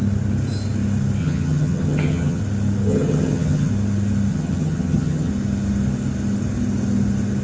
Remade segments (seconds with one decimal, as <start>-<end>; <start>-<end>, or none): 1.2-2.4; 2.9-3.7; 4.3-5.3